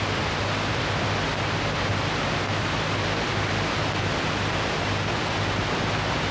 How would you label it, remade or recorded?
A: recorded